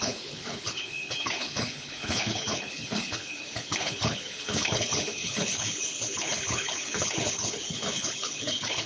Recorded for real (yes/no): no